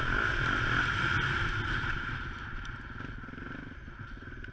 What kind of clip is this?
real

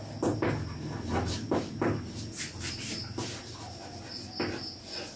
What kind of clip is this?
real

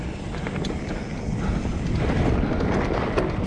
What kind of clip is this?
real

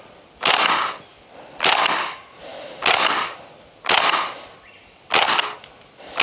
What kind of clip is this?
real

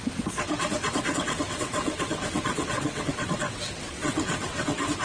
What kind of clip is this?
fake